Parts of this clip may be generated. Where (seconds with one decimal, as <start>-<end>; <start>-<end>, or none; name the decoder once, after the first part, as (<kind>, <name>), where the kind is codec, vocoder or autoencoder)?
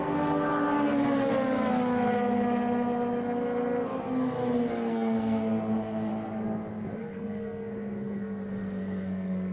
0.0-0.5 (codec, SNAC); 4.7-6.1; 7.0-9.5